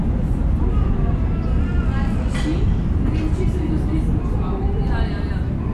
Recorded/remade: recorded